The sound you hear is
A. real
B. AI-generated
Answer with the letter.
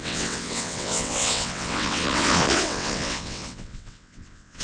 B